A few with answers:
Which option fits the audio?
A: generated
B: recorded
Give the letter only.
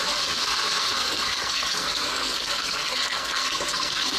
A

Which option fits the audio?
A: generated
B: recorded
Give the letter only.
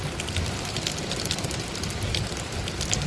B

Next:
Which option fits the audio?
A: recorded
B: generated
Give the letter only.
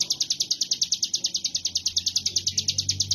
A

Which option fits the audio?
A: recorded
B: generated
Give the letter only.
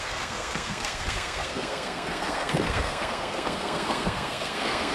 B